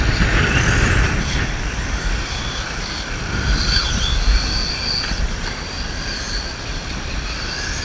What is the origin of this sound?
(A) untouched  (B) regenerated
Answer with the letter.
A